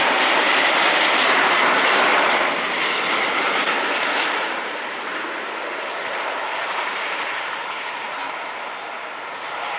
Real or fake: fake